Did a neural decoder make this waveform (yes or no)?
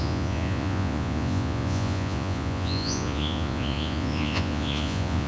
yes